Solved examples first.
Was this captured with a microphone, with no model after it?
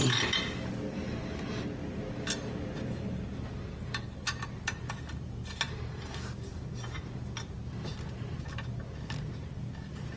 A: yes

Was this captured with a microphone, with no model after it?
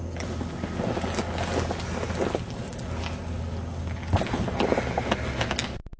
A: yes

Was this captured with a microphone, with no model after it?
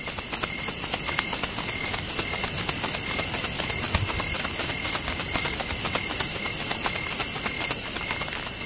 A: yes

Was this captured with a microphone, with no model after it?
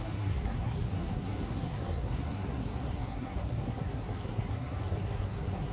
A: no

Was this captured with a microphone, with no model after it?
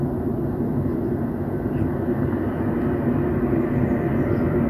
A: yes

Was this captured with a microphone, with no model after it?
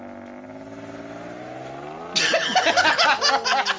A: yes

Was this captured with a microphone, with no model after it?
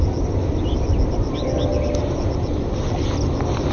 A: yes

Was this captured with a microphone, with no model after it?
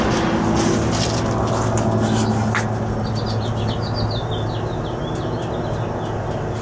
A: yes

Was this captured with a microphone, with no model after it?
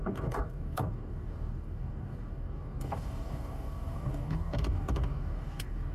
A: no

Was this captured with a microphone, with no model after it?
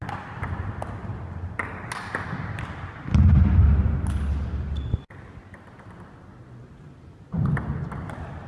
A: yes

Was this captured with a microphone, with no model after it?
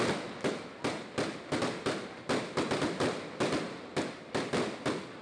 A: yes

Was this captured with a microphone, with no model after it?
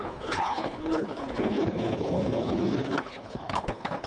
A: no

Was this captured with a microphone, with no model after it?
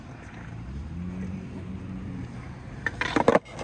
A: yes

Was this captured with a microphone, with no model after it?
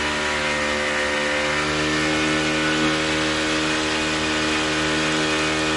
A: yes